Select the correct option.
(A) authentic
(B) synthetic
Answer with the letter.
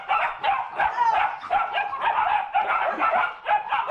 A